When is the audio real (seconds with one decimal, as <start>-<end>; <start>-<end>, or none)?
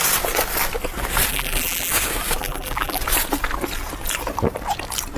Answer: 0.0-1.3; 1.9-2.4; 3.0-5.2